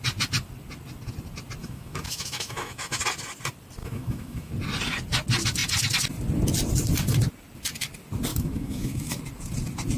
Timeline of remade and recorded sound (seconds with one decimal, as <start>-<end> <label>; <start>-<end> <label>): 0.0-1.6 recorded; 1.6-3.0 remade; 3.0-3.8 recorded; 3.8-4.5 remade; 4.5-8.3 recorded; 8.3-9.2 remade; 9.2-10.0 recorded